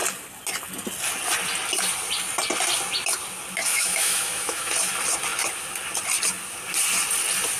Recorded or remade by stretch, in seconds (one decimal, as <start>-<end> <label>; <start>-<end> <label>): 0.0-3.7 recorded; 3.7-4.7 remade; 4.7-7.6 recorded